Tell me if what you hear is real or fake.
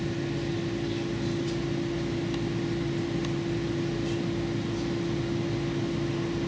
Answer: real